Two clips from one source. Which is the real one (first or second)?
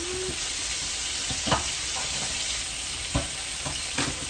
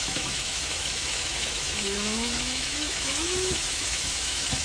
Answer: first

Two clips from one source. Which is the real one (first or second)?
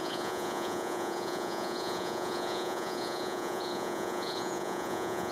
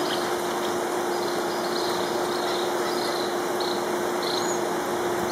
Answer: second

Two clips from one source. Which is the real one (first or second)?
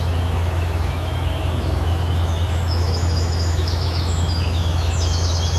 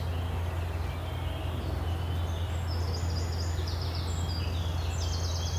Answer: second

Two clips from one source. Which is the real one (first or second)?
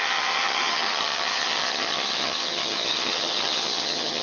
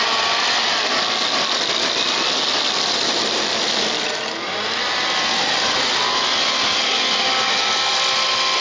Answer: second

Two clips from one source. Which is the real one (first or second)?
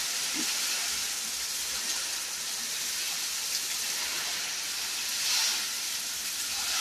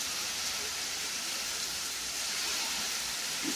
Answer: first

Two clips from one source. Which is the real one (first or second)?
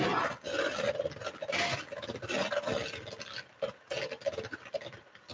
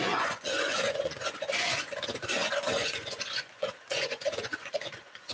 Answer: first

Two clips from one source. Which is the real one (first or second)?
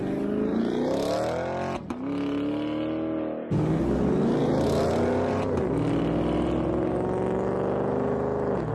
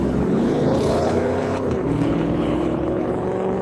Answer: first